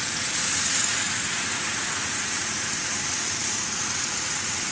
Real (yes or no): no